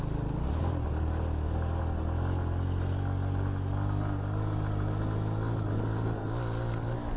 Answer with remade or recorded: recorded